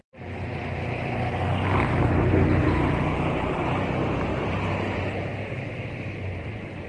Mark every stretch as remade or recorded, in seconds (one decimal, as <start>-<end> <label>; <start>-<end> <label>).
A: 0.0-4.3 recorded; 4.3-5.0 remade; 5.0-6.9 recorded

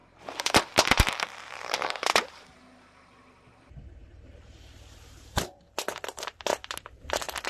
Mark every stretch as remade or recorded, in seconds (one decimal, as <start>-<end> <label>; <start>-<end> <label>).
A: 0.0-2.6 remade; 2.6-4.0 recorded; 4.0-5.6 remade; 5.6-7.5 recorded